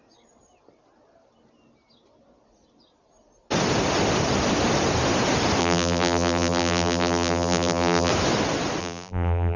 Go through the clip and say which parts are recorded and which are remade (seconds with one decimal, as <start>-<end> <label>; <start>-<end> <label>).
0.0-5.6 recorded; 5.6-8.1 remade; 8.1-8.8 recorded; 8.8-9.6 remade